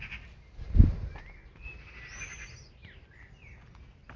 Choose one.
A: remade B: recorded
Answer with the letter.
B